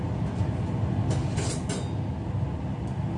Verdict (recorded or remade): recorded